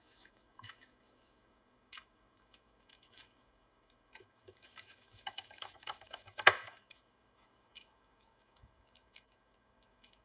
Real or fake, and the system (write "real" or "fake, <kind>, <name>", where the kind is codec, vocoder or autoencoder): fake, autoencoder, DAC-VAE